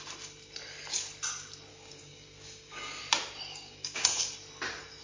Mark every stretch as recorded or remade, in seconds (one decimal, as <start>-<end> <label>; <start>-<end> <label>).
0.0-1.7 recorded; 1.7-3.0 remade; 3.0-3.5 recorded; 3.5-4.3 remade; 4.3-5.0 recorded